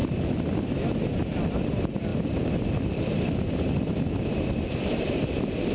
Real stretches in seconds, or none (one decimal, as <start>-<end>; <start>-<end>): 0.0-1.4